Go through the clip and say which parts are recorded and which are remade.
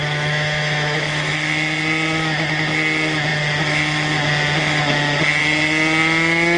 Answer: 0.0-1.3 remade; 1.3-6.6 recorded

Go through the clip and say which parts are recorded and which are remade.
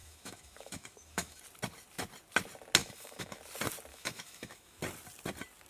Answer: 0.0-1.4 remade; 1.4-2.8 recorded; 2.8-3.4 remade; 3.4-3.9 recorded; 3.9-4.8 remade; 4.8-5.7 recorded